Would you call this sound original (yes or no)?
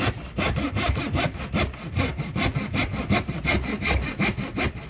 yes